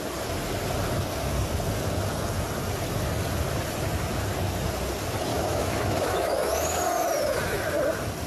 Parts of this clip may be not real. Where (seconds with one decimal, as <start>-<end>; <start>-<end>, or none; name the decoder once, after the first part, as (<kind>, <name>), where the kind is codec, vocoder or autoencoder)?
5.3-6.5 (autoencoder, DAC-VAE)